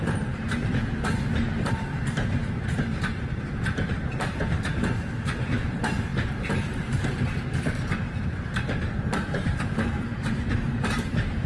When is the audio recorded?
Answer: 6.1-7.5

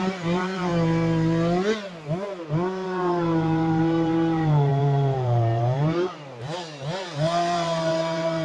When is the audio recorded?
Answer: 0.7-2.4

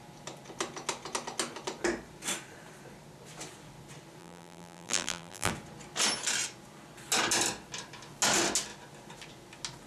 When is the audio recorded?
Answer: 0.0-4.2; 5.5-9.9

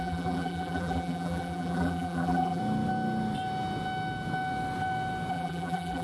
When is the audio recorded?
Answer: 2.6-5.3